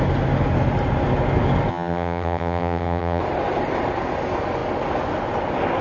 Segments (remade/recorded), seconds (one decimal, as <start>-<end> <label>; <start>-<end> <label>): 0.0-1.7 recorded; 1.7-3.2 remade; 3.2-5.8 recorded